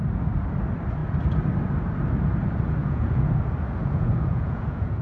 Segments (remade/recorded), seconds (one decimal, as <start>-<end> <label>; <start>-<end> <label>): 0.0-2.8 recorded; 2.8-3.4 remade; 3.4-3.8 recorded; 3.8-5.0 remade